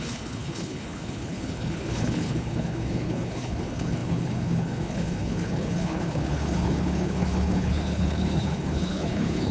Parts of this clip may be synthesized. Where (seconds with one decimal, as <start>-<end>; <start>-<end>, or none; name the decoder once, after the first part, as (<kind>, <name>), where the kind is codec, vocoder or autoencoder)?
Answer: 0.0-9.5 (codec, HILCodec)